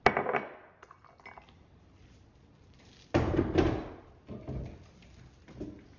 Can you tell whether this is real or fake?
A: real